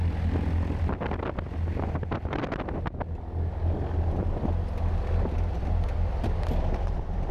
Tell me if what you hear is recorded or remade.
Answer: recorded